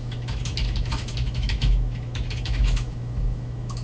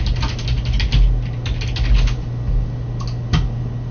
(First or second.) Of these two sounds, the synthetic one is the first